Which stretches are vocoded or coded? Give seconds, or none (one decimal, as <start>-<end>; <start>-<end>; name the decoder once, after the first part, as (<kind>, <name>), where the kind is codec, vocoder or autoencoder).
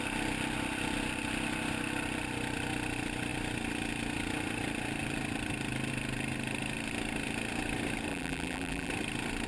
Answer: 8.1-8.9 (vocoder, BigVGAN v2)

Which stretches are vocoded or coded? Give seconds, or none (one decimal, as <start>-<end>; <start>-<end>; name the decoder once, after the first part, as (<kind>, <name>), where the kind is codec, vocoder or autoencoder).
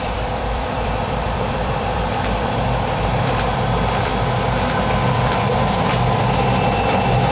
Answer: 0.0-4.1 (vocoder, BigVGAN v2); 5.1-7.3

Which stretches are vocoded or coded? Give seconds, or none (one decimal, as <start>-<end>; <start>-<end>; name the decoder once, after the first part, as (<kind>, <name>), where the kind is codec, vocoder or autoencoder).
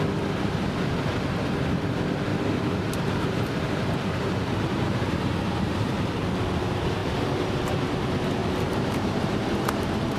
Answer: 2.3-6.0 (vocoder, BigVGAN v2); 8.4-9.5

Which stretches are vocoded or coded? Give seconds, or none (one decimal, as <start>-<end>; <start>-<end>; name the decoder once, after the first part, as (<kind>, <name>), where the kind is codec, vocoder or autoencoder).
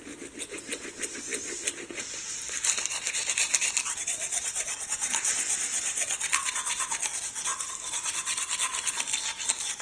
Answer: 1.3-6.2 (vocoder, BigVGAN v2)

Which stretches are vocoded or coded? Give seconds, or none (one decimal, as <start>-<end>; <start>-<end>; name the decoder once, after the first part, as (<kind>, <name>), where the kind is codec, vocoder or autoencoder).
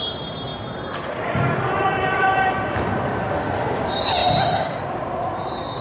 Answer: none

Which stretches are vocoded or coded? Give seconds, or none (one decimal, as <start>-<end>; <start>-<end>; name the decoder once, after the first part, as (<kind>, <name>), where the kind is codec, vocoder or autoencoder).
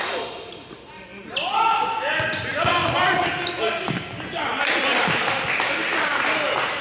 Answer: 2.8-3.6 (vocoder, BigVGAN v2)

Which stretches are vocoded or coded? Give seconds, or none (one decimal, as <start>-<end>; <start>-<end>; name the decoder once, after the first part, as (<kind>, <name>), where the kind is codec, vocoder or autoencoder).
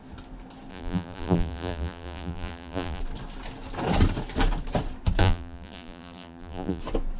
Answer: 0.7-3.0 (vocoder, BigVGAN v2); 5.2-6.8